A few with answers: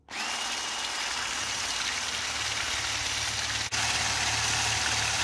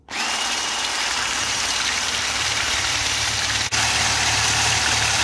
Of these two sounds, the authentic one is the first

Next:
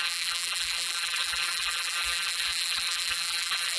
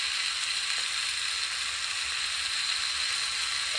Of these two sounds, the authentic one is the second